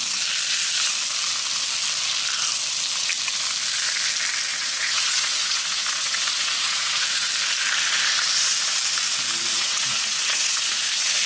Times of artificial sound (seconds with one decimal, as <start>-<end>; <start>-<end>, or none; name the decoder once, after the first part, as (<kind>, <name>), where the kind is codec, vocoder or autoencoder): 4.5-7.3 (vocoder, Vocos); 9.5-10.9